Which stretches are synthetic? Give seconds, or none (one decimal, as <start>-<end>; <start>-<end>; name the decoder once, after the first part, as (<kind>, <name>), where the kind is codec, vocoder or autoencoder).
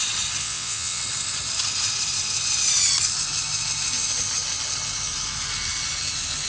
0.4-1.0 (vocoder, WaveNeXt)